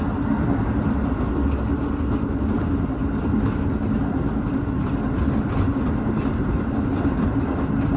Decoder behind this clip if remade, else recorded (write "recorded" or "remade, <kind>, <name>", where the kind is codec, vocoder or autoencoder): recorded